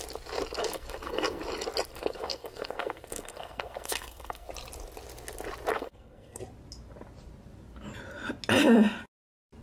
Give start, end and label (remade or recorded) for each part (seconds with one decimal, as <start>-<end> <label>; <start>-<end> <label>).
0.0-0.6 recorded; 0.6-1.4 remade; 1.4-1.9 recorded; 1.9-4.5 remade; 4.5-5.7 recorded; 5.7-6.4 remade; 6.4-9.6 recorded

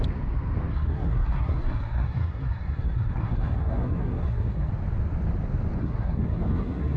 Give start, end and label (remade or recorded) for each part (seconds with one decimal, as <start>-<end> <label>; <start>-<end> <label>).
0.0-0.7 recorded; 0.7-4.7 remade; 4.7-5.8 recorded; 5.8-7.0 remade

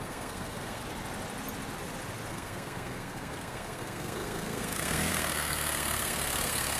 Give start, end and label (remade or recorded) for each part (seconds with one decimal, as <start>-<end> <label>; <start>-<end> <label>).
0.0-0.8 remade; 0.8-2.3 recorded; 2.3-6.8 remade

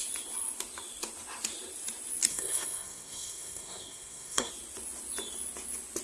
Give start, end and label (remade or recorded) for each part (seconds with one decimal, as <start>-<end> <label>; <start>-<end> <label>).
0.0-2.3 recorded; 2.3-4.5 remade; 4.5-6.0 recorded

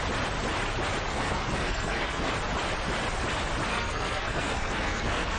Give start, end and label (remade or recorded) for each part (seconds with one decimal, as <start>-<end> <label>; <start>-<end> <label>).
0.0-1.1 recorded; 1.1-2.3 remade; 2.3-3.7 recorded; 3.7-5.4 remade